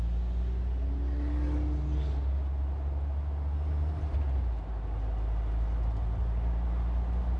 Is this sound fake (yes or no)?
no